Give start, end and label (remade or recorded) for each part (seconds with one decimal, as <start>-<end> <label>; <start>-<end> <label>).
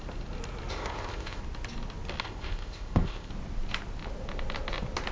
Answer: 0.0-0.7 recorded; 0.7-1.4 remade; 1.4-2.2 recorded; 2.2-3.3 remade; 3.3-5.1 recorded